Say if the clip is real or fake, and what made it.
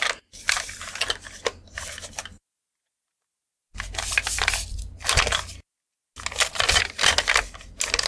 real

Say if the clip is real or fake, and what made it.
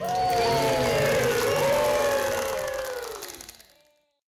real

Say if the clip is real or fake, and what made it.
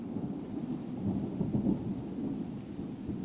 real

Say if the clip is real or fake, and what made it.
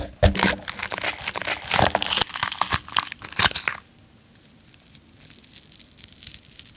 real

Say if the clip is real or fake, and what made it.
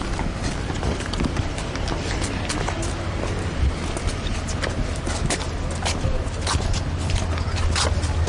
real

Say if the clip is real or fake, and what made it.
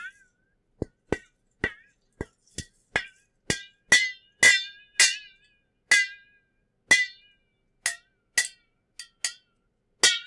real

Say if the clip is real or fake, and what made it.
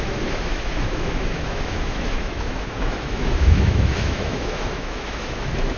fake, autoencoder, DAC-VAE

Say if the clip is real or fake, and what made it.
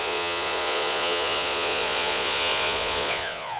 fake, vocoder, Vocos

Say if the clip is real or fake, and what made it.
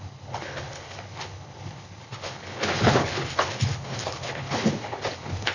fake, codec, HILCodec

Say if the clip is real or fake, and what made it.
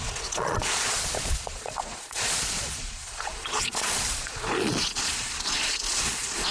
fake, vocoder, Vocos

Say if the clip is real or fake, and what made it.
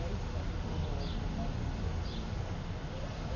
real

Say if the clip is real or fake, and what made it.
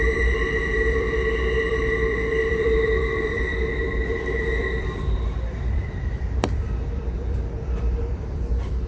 fake, vocoder, BigVGAN v2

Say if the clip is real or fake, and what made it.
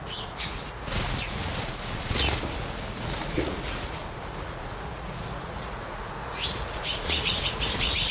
fake, vocoder, Vocos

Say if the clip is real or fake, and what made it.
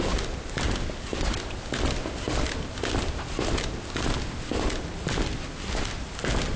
real